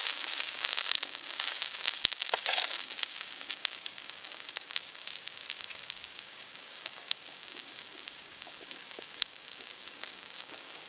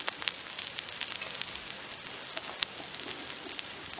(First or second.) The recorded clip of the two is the second